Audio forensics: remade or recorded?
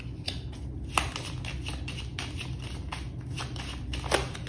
recorded